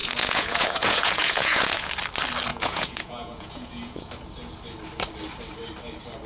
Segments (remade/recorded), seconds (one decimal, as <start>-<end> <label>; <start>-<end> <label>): 0.0-1.9 remade; 1.9-2.5 recorded; 2.5-4.1 remade; 4.1-6.3 recorded